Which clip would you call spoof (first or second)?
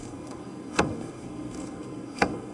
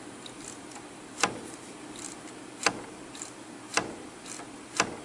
first